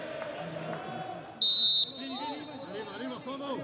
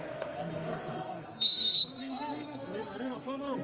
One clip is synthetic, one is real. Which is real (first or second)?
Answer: first